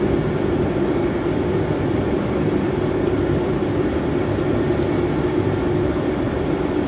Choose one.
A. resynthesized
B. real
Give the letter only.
B